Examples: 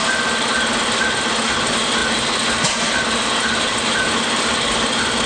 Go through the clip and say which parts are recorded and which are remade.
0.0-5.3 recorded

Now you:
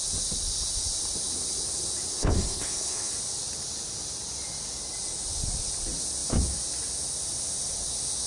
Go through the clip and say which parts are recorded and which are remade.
0.0-2.1 recorded; 2.1-3.1 remade; 3.1-8.3 recorded

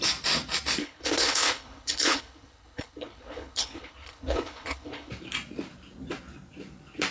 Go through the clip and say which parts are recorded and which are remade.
0.0-0.8 recorded; 0.8-5.1 remade; 5.1-7.1 recorded